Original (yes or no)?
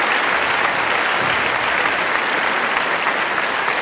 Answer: yes